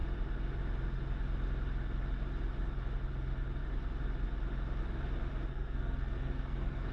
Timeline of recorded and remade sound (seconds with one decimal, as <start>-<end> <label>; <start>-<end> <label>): 0.0-5.5 recorded; 5.5-6.9 remade